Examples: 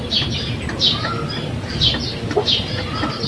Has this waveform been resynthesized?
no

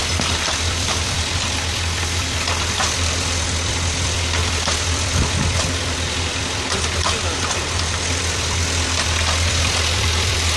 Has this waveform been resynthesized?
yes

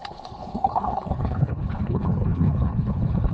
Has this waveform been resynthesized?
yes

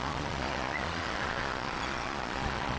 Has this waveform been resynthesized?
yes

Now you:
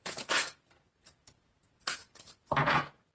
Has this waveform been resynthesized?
yes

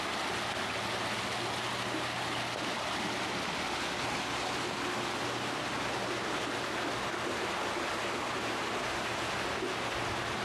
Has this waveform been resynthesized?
no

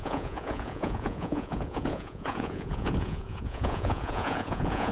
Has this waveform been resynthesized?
yes